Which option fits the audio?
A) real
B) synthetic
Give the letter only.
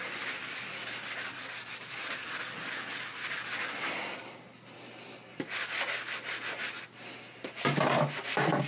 A